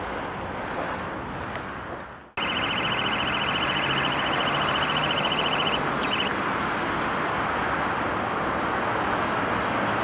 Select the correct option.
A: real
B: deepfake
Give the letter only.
A